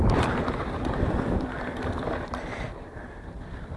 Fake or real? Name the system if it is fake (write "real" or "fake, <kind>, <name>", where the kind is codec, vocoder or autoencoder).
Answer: real